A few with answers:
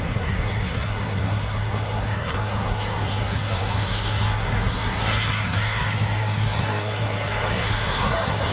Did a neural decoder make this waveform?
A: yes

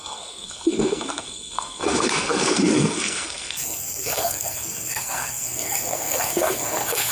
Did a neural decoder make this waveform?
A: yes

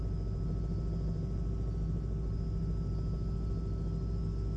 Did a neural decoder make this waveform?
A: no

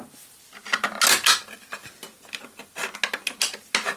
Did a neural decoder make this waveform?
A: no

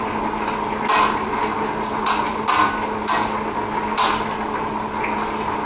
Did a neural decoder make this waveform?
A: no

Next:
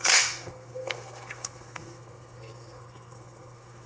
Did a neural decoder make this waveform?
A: yes